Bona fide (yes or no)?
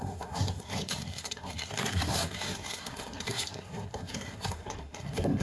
no